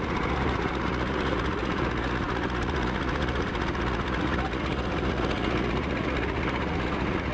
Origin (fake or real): fake